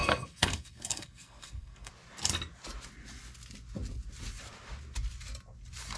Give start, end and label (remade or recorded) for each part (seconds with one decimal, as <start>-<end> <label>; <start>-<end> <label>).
0.0-1.9 remade; 1.9-6.0 recorded